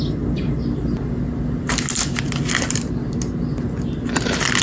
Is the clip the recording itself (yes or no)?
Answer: yes